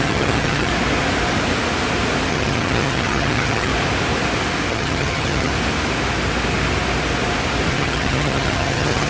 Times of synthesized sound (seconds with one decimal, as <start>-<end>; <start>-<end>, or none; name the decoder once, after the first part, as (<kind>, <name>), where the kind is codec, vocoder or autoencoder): 0.0-0.7 (vocoder, HiFi-GAN); 2.3-3.7; 4.7-5.5; 7.7-9.1